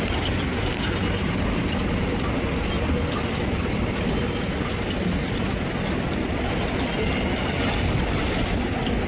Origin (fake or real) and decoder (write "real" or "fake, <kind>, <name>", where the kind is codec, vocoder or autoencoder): real